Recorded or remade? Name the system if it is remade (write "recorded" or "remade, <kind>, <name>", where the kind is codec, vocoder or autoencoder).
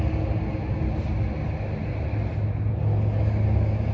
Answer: recorded